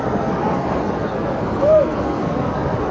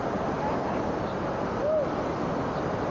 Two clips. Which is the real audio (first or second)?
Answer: second